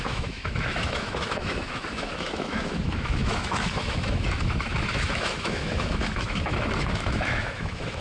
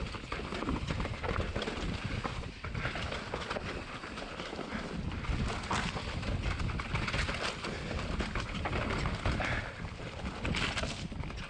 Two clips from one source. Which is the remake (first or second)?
first